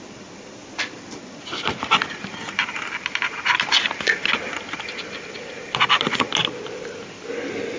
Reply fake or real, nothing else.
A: real